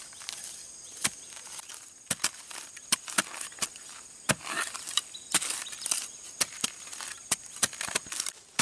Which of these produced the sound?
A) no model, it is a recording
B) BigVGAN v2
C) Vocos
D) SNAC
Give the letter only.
A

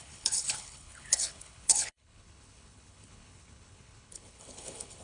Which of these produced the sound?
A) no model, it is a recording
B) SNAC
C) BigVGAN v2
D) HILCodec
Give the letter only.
D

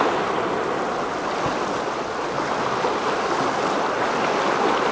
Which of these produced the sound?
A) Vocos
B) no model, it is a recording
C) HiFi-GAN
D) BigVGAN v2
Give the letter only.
B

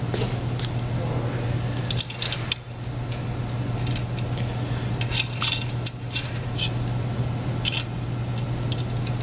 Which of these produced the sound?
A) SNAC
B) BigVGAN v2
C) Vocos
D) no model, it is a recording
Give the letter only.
D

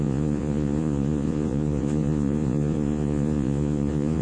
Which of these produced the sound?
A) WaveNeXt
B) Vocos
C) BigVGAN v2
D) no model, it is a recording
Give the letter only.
B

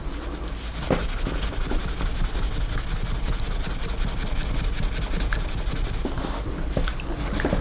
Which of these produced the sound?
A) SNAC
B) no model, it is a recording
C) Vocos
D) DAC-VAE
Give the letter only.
B